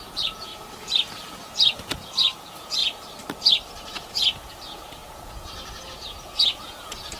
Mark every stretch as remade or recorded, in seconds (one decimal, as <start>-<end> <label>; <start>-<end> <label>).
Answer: 0.0-0.5 remade; 0.5-1.3 recorded; 1.3-2.8 remade; 2.8-3.9 recorded; 3.9-7.2 remade